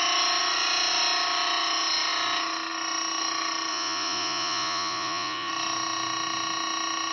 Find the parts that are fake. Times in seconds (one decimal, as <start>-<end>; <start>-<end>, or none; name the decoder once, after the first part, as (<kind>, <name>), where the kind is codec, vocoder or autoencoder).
3.7-5.5 (vocoder, Vocos)